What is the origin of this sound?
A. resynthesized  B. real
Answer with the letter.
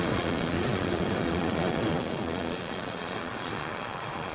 A